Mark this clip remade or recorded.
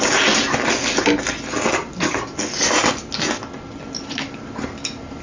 recorded